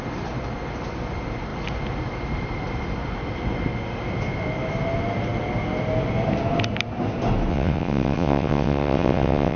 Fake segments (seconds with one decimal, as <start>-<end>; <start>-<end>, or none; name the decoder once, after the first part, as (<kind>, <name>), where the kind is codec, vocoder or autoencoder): 7.5-9.6 (vocoder, WaveNeXt)